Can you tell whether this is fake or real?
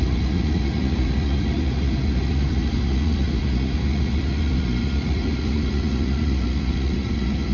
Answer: fake